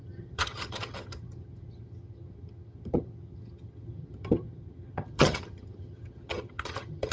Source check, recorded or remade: remade